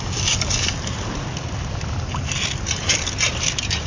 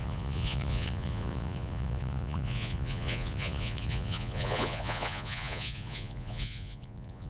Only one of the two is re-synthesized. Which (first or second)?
second